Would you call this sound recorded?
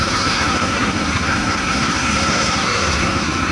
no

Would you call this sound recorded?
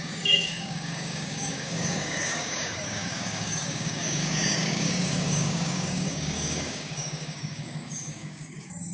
no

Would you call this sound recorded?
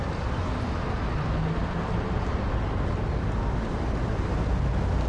yes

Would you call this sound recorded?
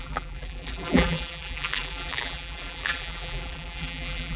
no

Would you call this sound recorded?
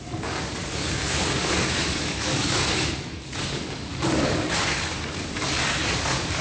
no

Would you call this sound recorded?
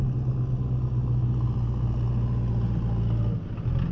yes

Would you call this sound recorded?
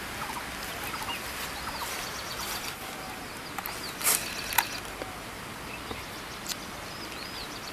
yes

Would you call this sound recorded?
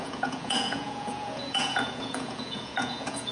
no